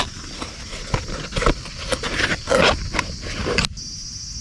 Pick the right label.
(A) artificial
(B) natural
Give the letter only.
B